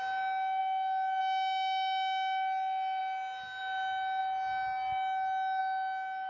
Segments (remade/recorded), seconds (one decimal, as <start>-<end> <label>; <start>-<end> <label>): 0.0-6.3 recorded